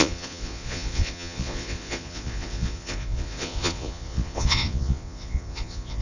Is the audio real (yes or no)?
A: no